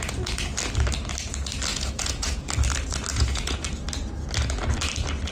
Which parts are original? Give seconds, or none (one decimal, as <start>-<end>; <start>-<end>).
0.0-1.7; 2.5-3.1; 3.6-5.3